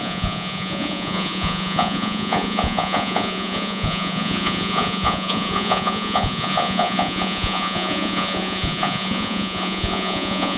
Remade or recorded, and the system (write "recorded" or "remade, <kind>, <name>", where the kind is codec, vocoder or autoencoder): remade, vocoder, Vocos